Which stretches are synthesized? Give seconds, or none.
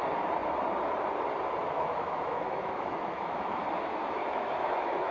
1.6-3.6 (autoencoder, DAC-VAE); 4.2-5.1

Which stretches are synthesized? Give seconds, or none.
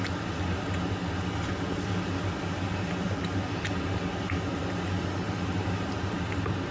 none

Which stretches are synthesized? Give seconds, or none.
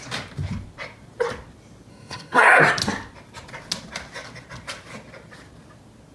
1.9-2.6 (codec, SNAC)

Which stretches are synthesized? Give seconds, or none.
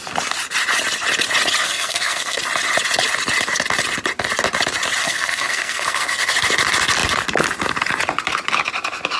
1.6-2.4 (codec, SNAC); 5.0-6.3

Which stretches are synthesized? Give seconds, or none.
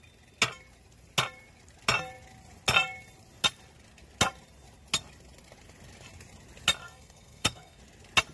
6.8-7.8 (codec, SNAC)